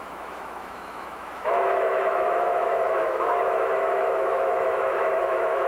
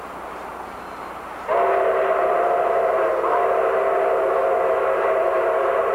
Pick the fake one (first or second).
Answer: first